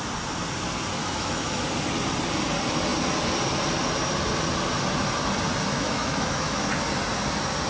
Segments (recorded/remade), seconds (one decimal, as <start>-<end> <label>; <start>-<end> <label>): 0.0-1.0 recorded; 1.0-1.6 remade; 1.6-5.7 recorded; 5.7-6.7 remade; 6.7-7.7 recorded